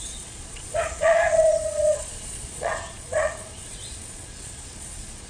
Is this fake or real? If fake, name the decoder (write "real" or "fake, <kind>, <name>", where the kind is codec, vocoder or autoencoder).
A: fake, vocoder, Vocos